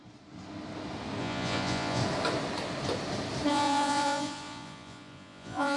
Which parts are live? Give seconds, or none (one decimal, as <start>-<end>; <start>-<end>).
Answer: 0.0-1.2; 2.0-3.5